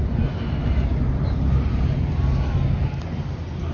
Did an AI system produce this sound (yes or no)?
no